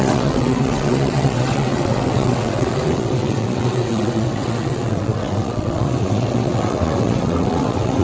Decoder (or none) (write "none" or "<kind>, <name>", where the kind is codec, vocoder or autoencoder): vocoder, WaveNeXt